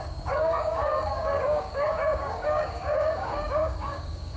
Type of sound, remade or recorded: remade